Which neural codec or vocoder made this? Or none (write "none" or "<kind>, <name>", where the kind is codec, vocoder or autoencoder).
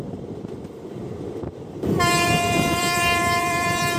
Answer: vocoder, BigVGAN v2